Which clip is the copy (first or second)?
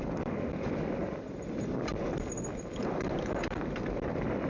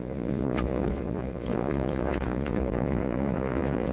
second